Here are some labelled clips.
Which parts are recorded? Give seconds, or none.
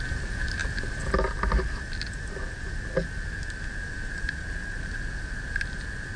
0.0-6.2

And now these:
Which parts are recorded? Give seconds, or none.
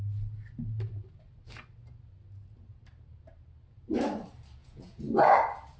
0.0-4.6; 5.3-5.8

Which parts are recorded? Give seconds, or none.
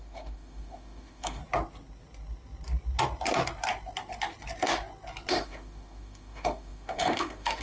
1.4-5.3